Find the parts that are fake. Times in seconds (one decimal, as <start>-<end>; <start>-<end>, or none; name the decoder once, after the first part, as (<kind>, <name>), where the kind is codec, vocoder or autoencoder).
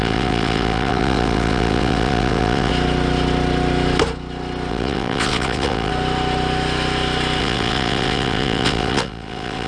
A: 0.0-2.7 (vocoder, WaveNeXt); 4.7-5.9; 7.4-9.7